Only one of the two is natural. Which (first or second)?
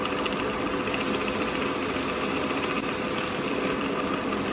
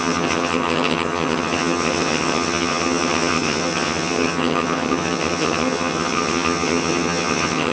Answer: first